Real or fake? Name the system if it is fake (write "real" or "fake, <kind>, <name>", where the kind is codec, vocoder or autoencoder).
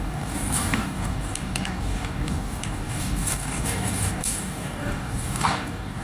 fake, codec, DAC